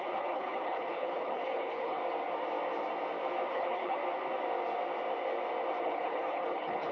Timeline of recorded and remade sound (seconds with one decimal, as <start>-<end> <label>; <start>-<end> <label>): 0.0-2.0 remade; 2.0-3.5 recorded; 3.5-4.0 remade; 4.0-5.8 recorded; 5.8-6.9 remade